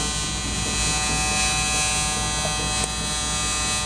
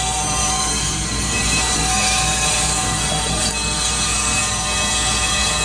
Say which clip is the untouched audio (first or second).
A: first